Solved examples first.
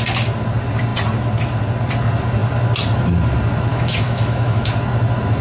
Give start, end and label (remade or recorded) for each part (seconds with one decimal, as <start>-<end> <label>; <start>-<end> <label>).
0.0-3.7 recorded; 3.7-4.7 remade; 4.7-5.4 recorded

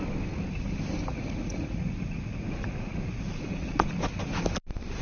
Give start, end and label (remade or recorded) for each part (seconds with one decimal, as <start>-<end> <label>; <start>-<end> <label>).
0.0-1.1 recorded; 1.1-3.9 remade; 3.9-5.0 recorded

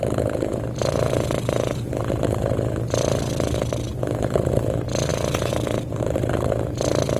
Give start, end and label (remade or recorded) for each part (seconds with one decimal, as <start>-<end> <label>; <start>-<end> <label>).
0.0-3.9 recorded; 3.9-4.5 remade; 4.5-5.1 recorded; 5.1-6.0 remade; 6.0-7.2 recorded

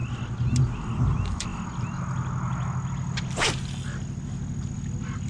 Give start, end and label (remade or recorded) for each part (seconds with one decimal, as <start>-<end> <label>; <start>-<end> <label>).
0.0-5.3 recorded

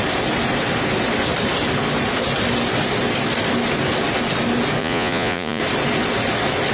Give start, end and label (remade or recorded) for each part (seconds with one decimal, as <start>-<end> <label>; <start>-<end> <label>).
0.0-4.8 recorded; 4.8-5.6 remade; 5.6-6.7 recorded

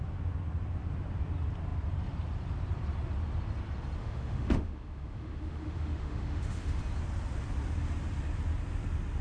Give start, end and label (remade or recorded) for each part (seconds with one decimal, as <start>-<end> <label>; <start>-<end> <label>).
0.0-4.0 recorded; 4.0-6.8 remade; 6.8-9.2 recorded

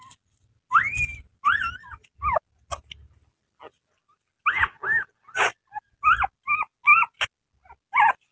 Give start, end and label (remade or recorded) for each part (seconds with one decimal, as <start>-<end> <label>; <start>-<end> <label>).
0.0-8.3 recorded